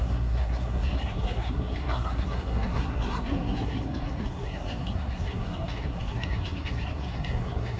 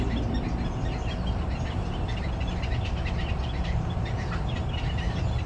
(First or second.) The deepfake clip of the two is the first